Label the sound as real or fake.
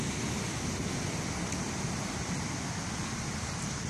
real